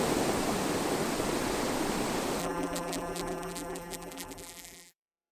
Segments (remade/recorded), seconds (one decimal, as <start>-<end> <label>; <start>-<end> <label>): 0.0-2.4 recorded; 2.4-5.3 remade